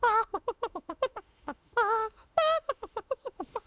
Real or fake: fake